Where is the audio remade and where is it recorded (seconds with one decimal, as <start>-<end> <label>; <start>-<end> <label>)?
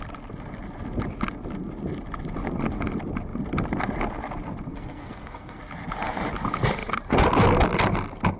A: 0.0-4.7 recorded; 4.7-5.6 remade; 5.6-8.4 recorded